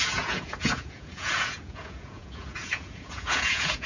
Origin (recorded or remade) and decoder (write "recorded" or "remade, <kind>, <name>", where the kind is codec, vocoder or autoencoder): remade, vocoder, Vocos